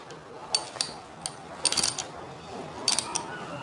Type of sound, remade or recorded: recorded